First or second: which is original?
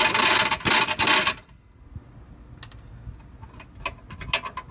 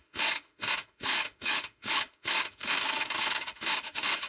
first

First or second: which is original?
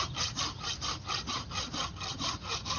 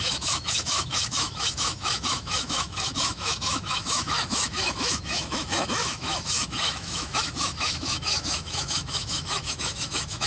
first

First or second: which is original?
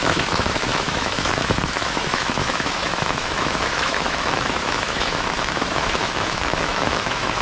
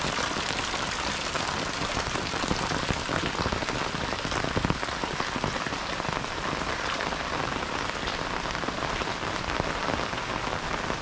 second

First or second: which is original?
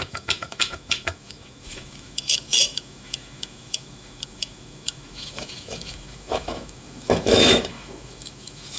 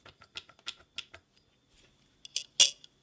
second